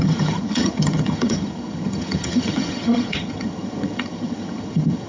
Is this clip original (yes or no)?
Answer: no